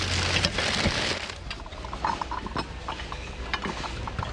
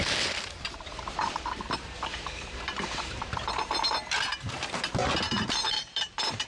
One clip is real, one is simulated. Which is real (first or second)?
first